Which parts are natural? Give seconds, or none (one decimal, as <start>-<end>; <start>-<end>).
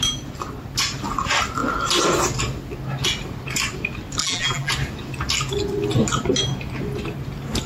0.0-4.2; 4.7-7.7